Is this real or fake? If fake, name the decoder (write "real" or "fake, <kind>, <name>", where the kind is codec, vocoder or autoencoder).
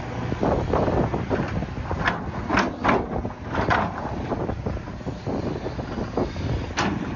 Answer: real